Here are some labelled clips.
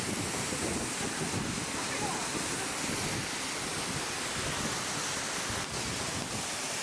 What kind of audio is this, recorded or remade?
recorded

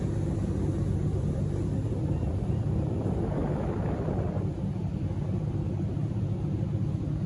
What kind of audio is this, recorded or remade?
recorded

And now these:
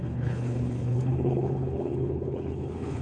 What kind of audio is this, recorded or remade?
remade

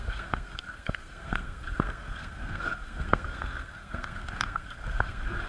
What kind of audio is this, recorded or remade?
remade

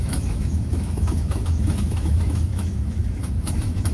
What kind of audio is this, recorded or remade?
remade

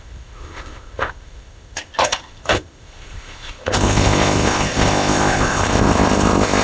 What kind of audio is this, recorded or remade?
remade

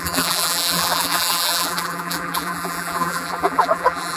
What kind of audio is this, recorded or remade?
remade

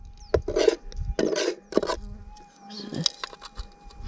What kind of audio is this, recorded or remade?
recorded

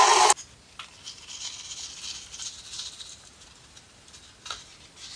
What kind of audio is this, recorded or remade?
recorded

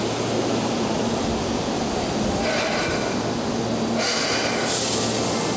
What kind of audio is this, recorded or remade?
recorded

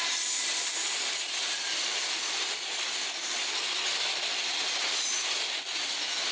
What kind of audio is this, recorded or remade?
recorded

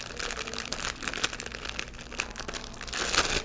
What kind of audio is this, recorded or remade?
recorded